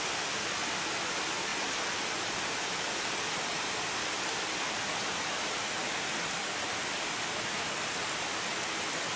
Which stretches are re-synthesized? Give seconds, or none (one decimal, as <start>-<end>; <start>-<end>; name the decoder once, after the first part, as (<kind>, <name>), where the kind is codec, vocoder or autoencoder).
none